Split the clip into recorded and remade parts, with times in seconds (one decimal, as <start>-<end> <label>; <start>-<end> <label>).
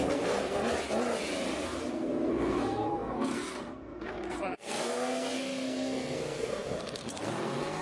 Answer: 0.0-0.6 remade; 0.6-1.9 recorded; 1.9-7.8 remade